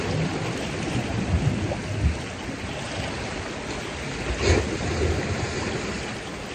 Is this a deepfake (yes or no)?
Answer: no